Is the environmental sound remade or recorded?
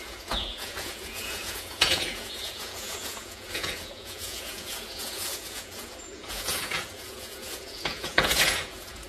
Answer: remade